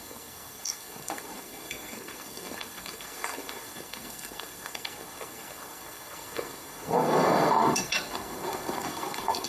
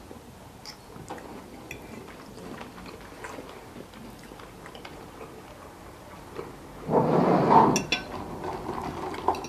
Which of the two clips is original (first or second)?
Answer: second